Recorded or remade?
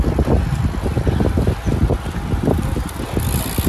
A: recorded